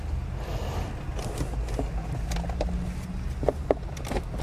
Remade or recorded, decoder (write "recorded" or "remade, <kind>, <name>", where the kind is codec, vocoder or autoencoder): recorded